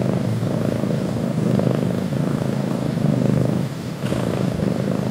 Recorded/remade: remade